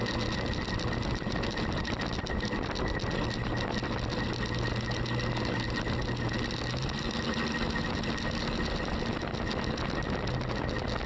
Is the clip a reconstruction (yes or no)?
no